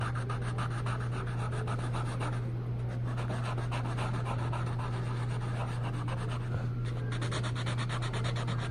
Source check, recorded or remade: recorded